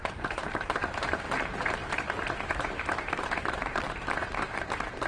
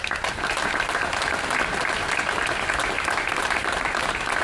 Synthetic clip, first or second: first